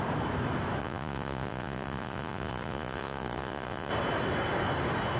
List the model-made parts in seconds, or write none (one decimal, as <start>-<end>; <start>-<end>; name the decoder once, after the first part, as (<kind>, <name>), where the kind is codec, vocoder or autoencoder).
0.8-3.9 (vocoder, Vocos)

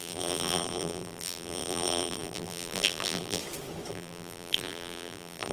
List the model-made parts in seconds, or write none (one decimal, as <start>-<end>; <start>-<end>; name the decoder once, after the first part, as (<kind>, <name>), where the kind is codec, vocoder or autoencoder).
0.0-3.4 (vocoder, BigVGAN v2); 3.9-5.5

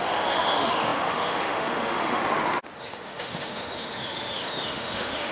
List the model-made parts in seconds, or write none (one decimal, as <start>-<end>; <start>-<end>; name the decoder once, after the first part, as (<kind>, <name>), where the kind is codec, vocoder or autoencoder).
0.0-2.2 (autoencoder, DAC-VAE); 2.8-5.3